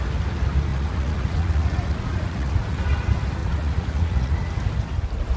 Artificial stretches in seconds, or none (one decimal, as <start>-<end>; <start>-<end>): 0.7-2.8; 3.4-4.5